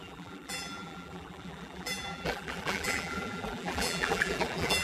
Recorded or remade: remade